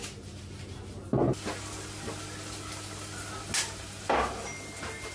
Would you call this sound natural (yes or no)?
yes